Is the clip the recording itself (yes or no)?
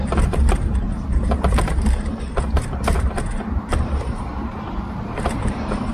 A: no